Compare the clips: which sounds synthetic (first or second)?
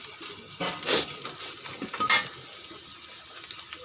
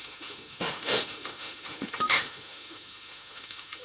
second